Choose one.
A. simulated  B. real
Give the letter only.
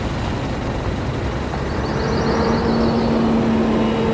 B